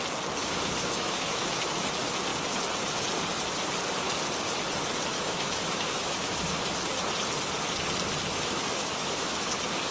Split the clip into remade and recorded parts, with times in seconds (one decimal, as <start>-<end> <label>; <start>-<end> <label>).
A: 0.0-0.4 recorded; 0.4-1.9 remade; 1.9-5.1 recorded; 5.1-6.7 remade; 6.7-8.3 recorded; 8.3-9.5 remade; 9.5-9.9 recorded